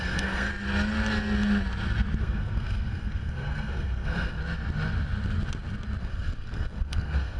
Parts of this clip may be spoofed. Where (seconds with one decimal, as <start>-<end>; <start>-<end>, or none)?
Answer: 0.0-0.5; 2.2-4.4; 6.0-7.4